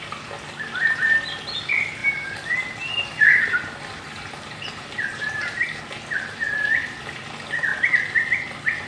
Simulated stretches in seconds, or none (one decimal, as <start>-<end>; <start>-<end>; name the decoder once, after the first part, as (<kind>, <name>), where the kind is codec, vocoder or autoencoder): 2.0-5.8 (vocoder, BigVGAN v2)